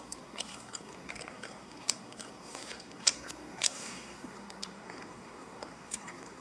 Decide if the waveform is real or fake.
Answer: fake